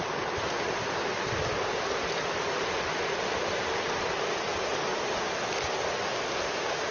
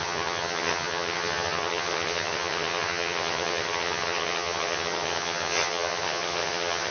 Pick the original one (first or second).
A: first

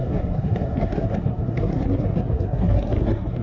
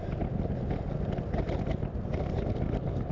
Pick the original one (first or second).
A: second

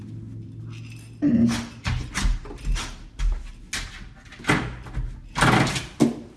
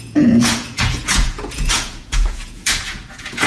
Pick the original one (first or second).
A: first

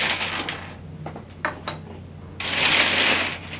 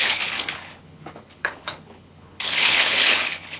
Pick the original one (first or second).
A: first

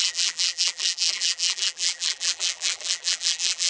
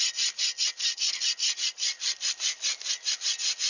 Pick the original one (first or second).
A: second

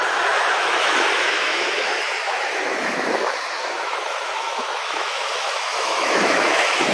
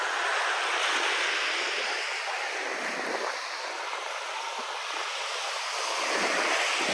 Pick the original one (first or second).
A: second